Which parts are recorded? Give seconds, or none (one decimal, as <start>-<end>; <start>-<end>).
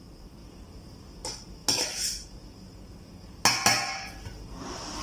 0.0-5.0